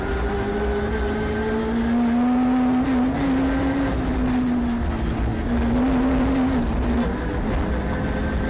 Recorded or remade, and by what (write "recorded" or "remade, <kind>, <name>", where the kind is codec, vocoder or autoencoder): recorded